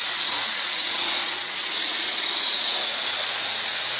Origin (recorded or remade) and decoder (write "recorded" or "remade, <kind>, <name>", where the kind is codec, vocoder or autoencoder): remade, vocoder, Vocos